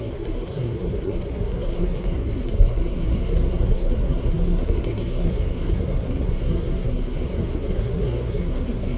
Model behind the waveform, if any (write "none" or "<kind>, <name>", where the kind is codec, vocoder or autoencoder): codec, SNAC